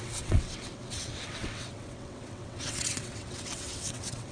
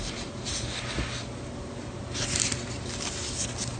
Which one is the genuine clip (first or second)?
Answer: second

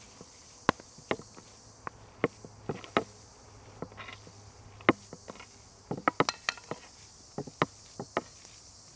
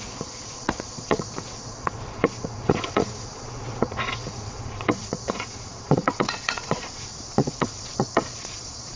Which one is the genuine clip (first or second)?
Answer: first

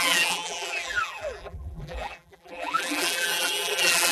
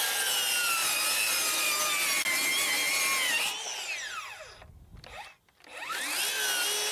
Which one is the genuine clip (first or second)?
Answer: second